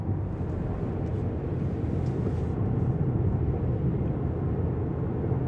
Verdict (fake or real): real